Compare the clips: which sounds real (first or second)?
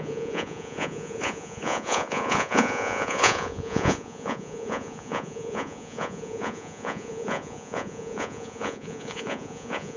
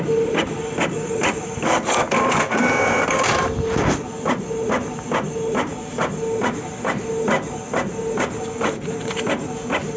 second